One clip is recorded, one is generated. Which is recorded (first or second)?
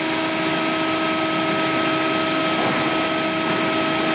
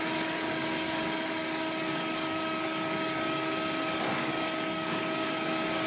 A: first